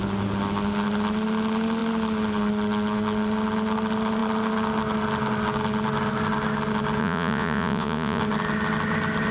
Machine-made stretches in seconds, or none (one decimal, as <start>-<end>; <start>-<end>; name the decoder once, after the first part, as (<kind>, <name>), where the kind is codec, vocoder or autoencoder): 7.0-8.2 (vocoder, Vocos)